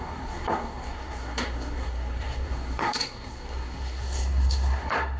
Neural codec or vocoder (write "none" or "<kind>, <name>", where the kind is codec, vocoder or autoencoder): codec, SNAC